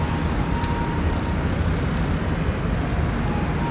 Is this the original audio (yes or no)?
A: yes